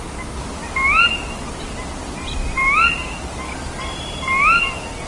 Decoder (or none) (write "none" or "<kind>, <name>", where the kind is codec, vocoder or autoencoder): none